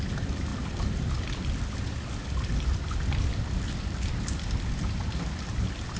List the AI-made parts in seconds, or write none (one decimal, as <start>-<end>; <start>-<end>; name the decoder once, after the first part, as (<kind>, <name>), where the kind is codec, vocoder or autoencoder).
none